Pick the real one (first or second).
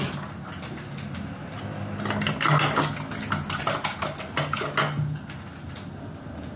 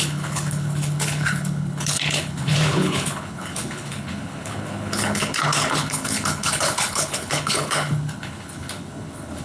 first